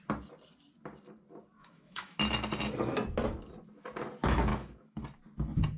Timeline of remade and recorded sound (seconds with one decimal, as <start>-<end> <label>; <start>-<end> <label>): 0.0-1.6 recorded; 1.6-2.2 remade; 2.2-4.5 recorded; 4.5-5.0 remade; 5.0-5.8 recorded